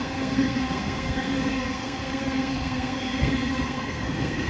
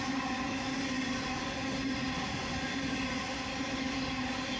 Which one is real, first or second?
second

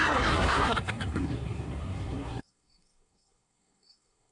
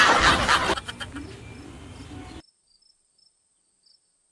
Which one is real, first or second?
second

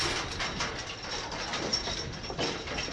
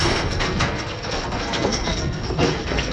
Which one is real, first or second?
first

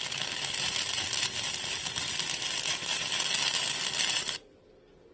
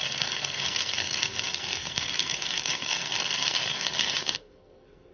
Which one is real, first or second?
first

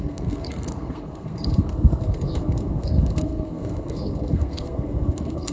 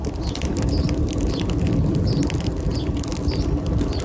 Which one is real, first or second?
second